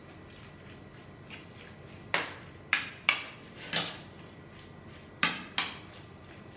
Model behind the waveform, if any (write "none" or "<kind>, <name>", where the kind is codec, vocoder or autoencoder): none